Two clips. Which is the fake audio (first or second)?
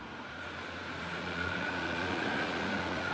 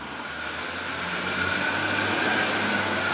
first